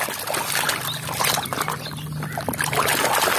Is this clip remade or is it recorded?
recorded